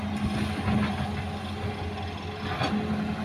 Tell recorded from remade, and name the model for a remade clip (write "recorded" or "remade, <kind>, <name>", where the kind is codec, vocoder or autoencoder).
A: recorded